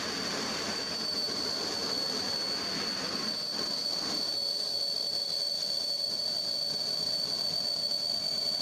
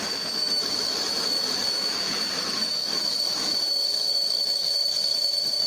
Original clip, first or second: first